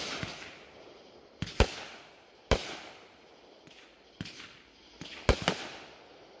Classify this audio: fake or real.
real